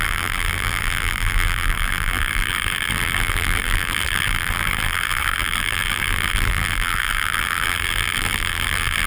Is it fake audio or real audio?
fake